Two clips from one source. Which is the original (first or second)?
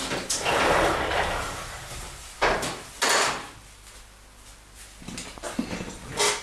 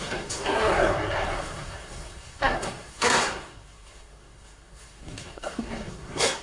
first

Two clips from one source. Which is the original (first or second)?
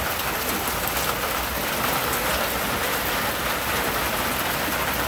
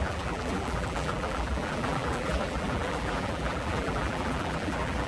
first